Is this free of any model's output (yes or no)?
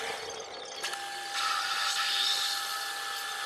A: yes